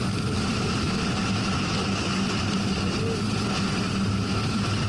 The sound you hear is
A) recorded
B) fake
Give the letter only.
B